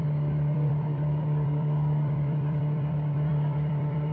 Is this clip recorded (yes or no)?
no